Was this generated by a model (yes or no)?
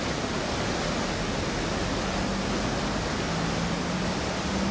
no